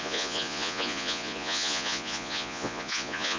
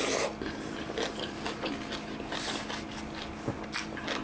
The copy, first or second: first